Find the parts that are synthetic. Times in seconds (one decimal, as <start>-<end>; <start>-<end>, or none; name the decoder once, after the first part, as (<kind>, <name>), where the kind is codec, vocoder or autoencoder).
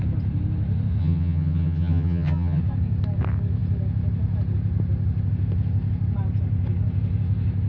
1.0-2.6 (vocoder, HiFi-GAN)